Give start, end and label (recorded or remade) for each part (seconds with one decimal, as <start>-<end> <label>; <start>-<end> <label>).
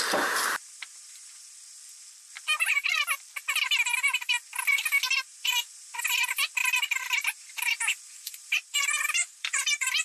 0.0-1.3 remade; 1.3-5.3 recorded; 5.3-6.6 remade; 6.6-7.4 recorded; 7.4-10.0 remade